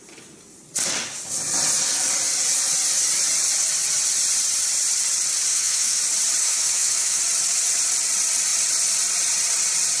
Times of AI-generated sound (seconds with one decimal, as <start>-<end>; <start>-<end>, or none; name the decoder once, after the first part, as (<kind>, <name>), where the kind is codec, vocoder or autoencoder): 5.5-6.0 (autoencoder, DAC-VAE); 6.4-7.2